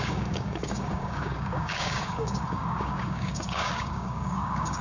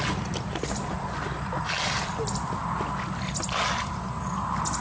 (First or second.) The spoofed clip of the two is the first